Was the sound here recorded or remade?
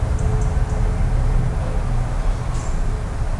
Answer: recorded